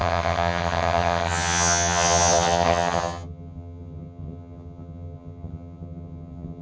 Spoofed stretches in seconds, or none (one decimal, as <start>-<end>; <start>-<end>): 0.0-6.6